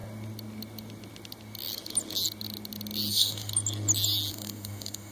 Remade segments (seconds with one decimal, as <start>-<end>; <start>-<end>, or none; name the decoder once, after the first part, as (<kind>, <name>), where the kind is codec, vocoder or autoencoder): 3.1-3.5 (codec, DAC); 4.3-5.1